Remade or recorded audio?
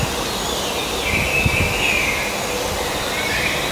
recorded